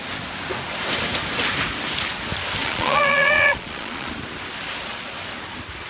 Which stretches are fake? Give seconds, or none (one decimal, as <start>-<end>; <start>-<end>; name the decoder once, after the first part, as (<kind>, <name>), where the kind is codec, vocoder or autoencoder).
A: 2.6-4.1 (vocoder, Vocos)